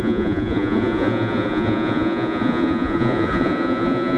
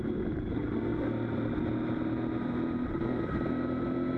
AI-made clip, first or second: first